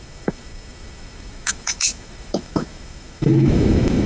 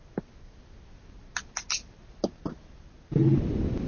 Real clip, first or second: second